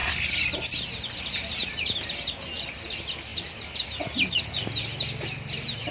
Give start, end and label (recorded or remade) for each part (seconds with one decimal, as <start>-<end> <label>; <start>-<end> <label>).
0.0-5.9 recorded